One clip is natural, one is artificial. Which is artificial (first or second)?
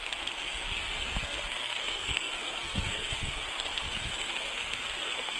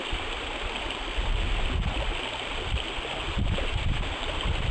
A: first